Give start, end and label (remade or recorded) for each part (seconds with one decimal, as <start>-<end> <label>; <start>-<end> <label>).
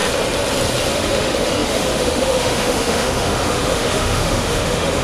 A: 0.0-0.9 recorded; 0.9-5.0 remade